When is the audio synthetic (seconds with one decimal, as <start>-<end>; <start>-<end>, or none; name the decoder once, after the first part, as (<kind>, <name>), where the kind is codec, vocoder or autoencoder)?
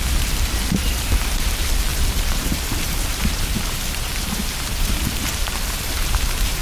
0.0-6.6 (vocoder, BigVGAN v2)